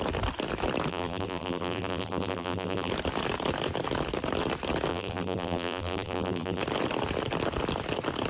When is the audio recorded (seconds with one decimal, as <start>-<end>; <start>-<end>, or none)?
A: 0.0-0.9; 2.9-4.9; 6.6-8.3